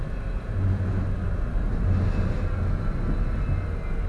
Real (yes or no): yes